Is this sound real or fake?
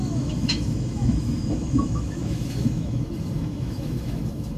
fake